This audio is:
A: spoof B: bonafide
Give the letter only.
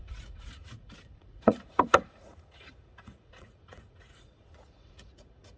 A